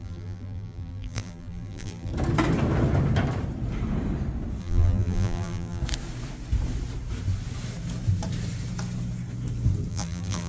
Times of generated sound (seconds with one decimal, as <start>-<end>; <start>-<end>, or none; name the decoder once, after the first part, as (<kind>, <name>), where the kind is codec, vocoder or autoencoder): 0.0-2.1 (vocoder, BigVGAN v2); 4.6-5.8; 9.9-10.5